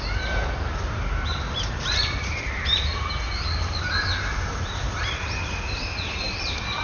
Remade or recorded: remade